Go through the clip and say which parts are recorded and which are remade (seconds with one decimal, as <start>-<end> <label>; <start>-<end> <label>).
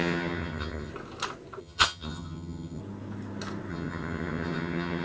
0.0-0.9 remade; 0.9-1.6 recorded; 1.6-2.8 remade; 2.8-3.7 recorded; 3.7-5.0 remade